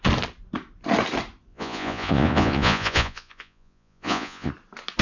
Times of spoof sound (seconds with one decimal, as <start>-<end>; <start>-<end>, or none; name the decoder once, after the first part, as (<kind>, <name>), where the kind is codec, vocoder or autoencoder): 1.5-4.5 (vocoder, Vocos)